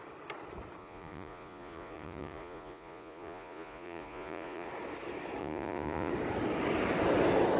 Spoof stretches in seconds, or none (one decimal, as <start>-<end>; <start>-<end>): 0.8-4.7; 5.4-6.1